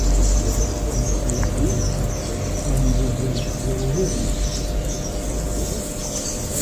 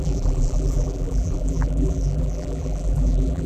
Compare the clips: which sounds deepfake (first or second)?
second